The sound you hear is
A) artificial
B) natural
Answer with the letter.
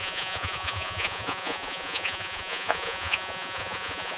A